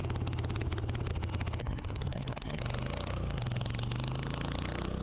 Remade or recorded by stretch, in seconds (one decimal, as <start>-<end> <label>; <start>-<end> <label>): 0.0-1.6 recorded; 1.6-2.6 remade; 2.6-5.0 recorded